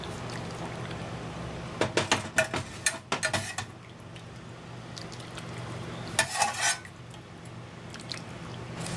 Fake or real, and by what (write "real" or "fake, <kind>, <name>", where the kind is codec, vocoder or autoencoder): real